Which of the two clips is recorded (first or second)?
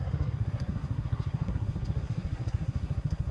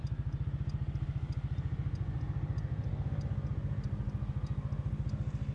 second